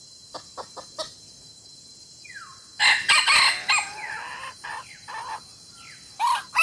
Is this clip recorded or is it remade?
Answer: recorded